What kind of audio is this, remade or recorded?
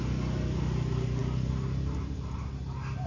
recorded